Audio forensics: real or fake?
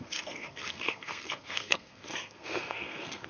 fake